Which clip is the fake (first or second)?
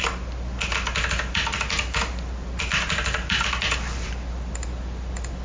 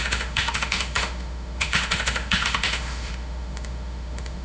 second